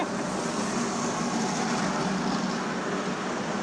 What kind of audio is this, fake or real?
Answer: real